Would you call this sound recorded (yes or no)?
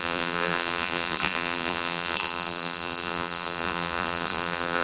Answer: no